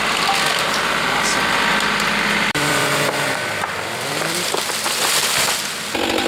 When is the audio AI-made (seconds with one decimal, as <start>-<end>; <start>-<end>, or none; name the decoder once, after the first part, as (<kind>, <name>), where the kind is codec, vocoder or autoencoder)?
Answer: 1.7-5.5 (vocoder, BigVGAN v2)